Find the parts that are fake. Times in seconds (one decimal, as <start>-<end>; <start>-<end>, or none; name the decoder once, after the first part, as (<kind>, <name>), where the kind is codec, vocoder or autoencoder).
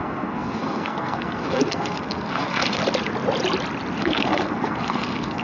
0.0-2.8 (codec, SNAC); 4.0-5.4